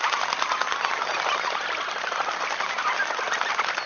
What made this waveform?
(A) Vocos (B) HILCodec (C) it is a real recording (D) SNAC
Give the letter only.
C